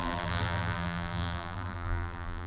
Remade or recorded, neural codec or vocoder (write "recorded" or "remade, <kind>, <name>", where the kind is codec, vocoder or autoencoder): remade, vocoder, BigVGAN v2